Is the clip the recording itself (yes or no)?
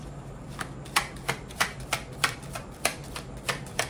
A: no